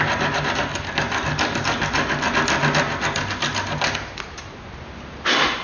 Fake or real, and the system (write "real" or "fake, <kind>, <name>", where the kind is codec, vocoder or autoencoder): real